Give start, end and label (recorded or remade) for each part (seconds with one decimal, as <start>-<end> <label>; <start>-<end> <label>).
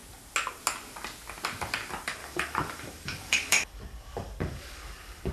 0.0-2.2 recorded; 2.2-5.3 remade